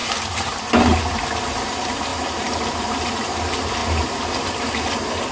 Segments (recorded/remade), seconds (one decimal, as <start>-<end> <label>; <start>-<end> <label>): 0.0-1.1 remade; 1.1-2.1 recorded; 2.1-3.1 remade; 3.1-3.8 recorded; 3.8-5.3 remade